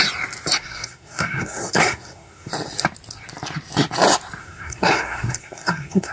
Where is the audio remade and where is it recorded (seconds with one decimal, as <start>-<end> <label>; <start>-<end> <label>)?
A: 0.0-0.6 recorded; 0.6-2.5 remade; 2.5-4.4 recorded; 4.4-6.1 remade